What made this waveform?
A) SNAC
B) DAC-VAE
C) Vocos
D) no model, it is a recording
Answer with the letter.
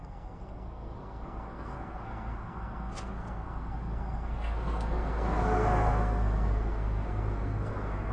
A